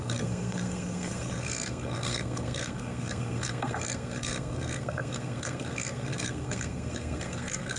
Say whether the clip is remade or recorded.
remade